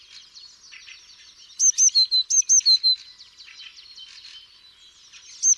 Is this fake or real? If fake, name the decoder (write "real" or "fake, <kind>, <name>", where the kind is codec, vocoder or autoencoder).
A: real